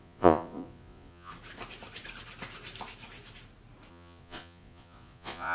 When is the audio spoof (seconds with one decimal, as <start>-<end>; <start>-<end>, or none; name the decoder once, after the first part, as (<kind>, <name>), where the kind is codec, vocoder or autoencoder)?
0.0-1.3 (vocoder, Vocos); 3.9-5.5